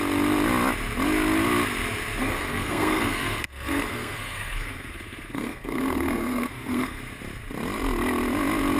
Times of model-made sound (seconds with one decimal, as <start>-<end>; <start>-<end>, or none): 2.2-7.0